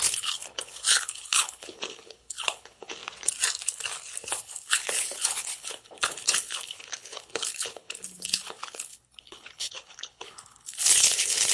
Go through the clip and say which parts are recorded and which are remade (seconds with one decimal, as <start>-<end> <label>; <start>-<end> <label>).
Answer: 0.0-3.0 remade; 3.0-4.4 recorded; 4.4-11.5 remade